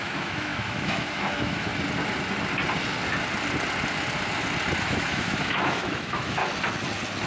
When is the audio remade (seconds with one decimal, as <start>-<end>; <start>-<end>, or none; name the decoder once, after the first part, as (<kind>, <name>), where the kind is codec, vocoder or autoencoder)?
0.0-1.7 (autoencoder, DAC-VAE); 4.8-6.4